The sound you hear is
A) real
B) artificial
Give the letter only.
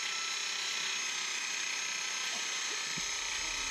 A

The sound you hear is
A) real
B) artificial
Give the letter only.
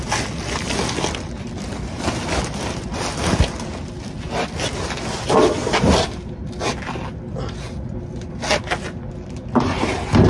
A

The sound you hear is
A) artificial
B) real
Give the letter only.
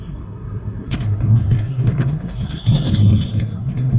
A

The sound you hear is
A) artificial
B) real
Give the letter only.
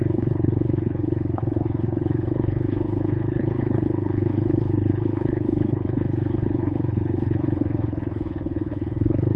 A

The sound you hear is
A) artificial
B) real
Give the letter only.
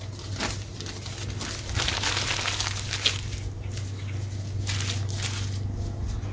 B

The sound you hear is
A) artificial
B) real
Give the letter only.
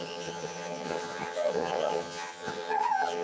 A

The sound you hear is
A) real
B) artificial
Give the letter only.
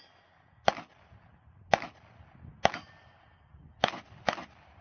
A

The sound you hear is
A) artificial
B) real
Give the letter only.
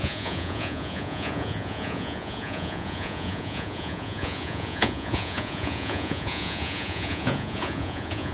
A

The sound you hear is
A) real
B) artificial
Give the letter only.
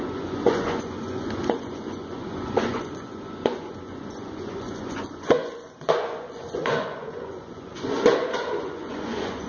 B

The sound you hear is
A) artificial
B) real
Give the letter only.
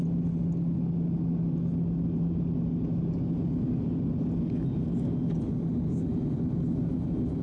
B